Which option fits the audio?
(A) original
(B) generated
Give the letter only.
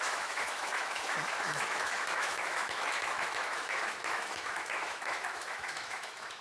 B